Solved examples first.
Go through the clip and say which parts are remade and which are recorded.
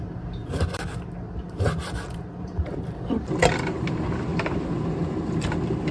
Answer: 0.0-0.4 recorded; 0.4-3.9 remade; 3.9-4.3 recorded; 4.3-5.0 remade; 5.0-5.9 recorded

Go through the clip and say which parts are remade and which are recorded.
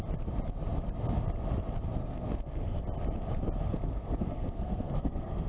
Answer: 0.0-2.0 recorded; 2.0-2.8 remade; 2.8-3.7 recorded; 3.7-5.5 remade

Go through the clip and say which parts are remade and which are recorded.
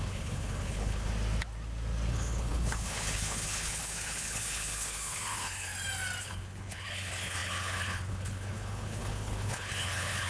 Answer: 0.0-1.1 remade; 1.1-2.1 recorded; 2.1-5.7 remade; 5.7-6.2 recorded; 6.2-10.3 remade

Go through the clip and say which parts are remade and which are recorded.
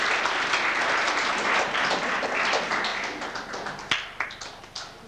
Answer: 0.0-5.1 recorded